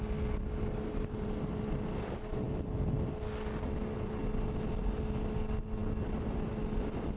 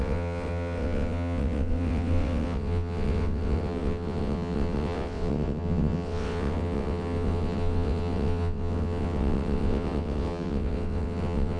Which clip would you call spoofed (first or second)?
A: second